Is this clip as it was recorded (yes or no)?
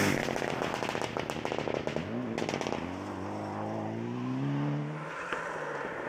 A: yes